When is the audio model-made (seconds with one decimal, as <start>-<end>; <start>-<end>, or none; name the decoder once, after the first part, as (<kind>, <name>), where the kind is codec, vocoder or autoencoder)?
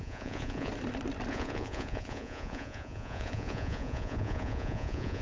0.0-0.7 (vocoder, Vocos); 1.3-5.2